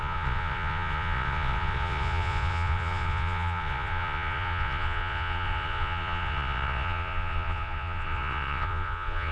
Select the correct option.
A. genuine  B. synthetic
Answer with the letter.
B